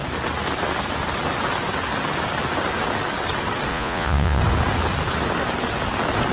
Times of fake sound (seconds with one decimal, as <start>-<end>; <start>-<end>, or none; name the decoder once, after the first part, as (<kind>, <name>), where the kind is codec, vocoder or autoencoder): 3.7-4.4 (vocoder, Vocos)